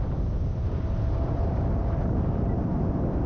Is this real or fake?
real